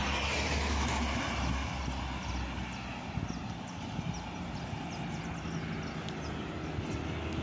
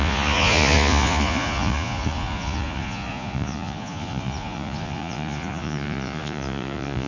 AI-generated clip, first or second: second